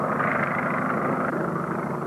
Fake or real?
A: real